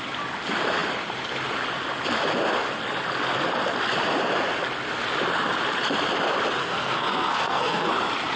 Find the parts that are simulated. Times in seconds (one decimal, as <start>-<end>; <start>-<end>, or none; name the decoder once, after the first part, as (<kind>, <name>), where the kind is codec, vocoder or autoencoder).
6.6-7.9 (codec, SNAC)